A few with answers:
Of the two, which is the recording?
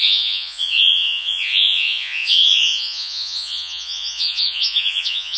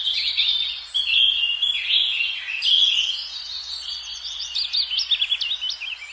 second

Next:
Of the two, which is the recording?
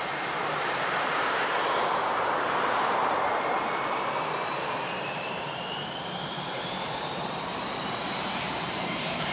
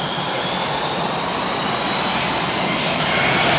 second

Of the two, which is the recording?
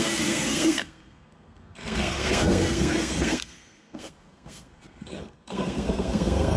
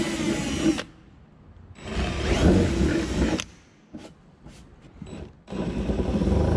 second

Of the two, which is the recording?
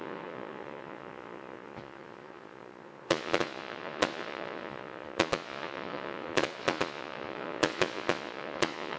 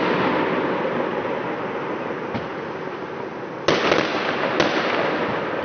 second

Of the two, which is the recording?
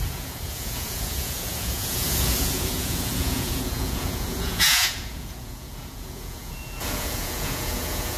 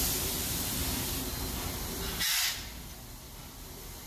second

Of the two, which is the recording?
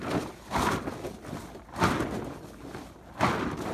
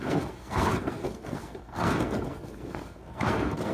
first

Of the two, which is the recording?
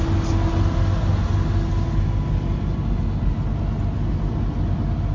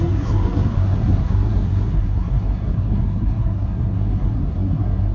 first